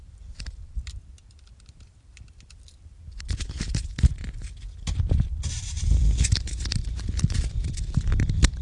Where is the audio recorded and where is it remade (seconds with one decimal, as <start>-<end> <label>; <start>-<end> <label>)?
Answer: 0.0-8.6 remade